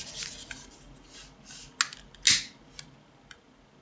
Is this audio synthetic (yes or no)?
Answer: no